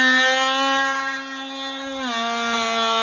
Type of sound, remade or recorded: recorded